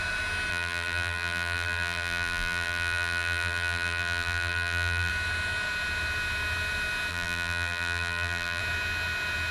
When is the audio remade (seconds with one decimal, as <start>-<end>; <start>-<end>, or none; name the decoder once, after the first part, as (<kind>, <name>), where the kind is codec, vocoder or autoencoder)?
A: 0.5-5.1 (vocoder, BigVGAN v2); 7.1-8.6